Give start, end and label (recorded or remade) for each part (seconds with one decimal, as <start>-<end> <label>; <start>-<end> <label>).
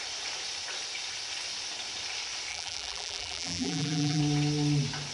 0.0-2.5 recorded; 2.5-4.2 remade; 4.2-5.1 recorded